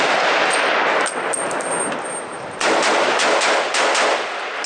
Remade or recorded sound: recorded